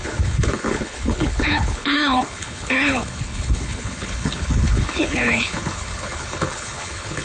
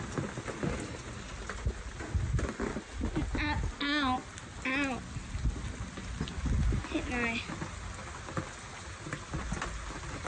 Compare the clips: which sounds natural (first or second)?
second